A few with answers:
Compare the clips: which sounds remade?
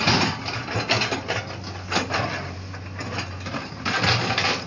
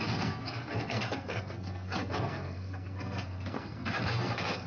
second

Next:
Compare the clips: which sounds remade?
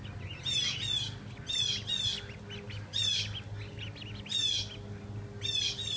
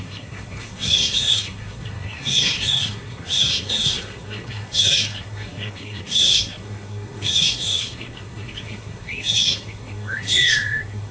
second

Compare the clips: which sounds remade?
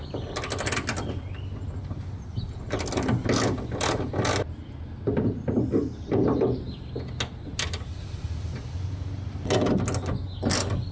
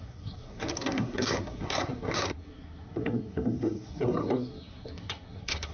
second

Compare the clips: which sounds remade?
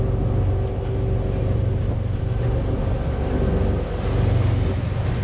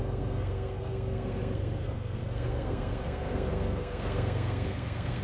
second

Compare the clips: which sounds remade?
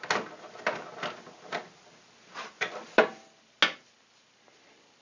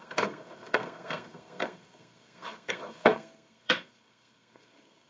second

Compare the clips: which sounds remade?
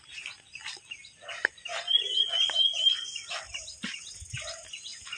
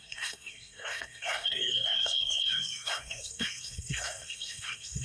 second